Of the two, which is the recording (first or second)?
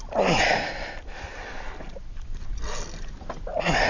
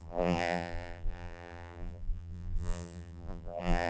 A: first